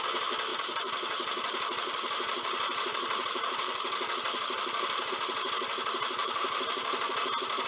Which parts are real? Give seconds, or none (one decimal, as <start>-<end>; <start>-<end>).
0.0-0.5; 5.1-6.2

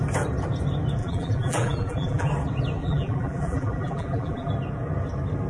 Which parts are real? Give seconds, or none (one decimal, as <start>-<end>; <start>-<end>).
0.0-1.0; 2.3-2.8; 4.5-5.5

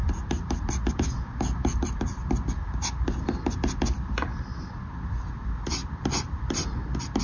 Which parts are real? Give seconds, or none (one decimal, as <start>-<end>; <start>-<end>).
0.0-7.2

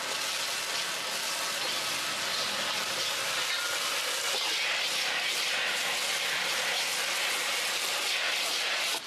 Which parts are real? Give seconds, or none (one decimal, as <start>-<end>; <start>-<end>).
0.0-2.3; 3.0-9.1